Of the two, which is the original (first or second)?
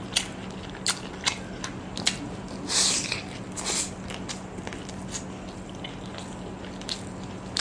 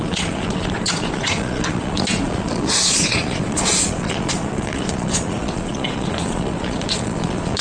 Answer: first